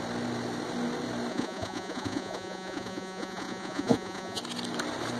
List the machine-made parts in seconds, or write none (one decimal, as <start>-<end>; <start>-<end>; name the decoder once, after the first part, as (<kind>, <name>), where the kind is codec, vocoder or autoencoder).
1.3-4.4 (vocoder, Vocos)